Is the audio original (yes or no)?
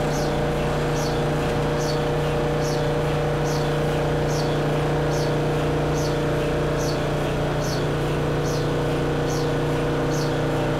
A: yes